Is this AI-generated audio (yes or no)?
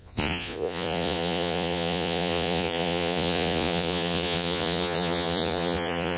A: yes